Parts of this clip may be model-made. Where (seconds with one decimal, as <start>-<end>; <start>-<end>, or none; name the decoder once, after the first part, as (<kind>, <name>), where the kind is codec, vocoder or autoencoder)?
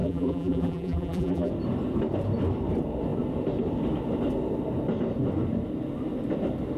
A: 0.0-1.5 (vocoder, BigVGAN v2)